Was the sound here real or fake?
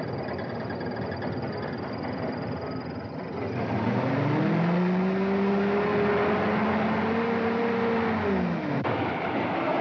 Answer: real